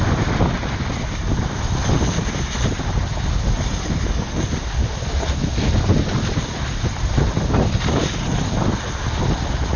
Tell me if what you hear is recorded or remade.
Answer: recorded